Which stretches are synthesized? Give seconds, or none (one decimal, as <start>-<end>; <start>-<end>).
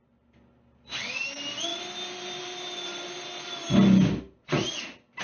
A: none